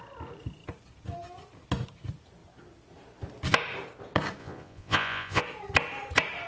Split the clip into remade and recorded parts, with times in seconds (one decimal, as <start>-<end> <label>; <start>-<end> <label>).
0.0-4.4 recorded; 4.4-5.4 remade; 5.4-6.5 recorded